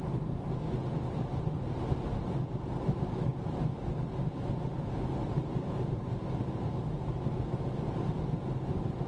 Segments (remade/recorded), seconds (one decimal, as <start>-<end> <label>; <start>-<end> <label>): 0.0-9.1 recorded